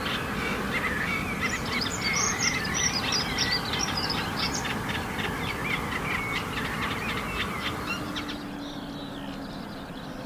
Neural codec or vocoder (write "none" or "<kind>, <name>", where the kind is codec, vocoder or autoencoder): none